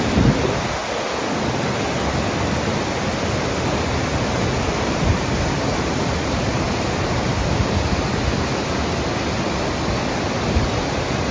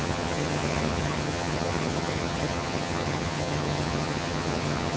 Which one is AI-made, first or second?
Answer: second